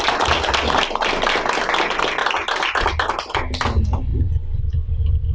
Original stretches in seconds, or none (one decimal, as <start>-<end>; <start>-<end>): 0.0-5.3